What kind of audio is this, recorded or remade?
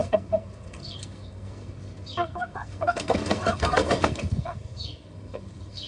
remade